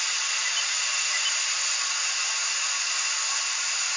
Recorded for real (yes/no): yes